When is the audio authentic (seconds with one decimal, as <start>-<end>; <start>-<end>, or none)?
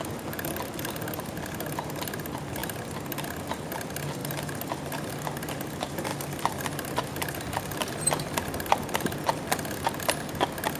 0.0-10.8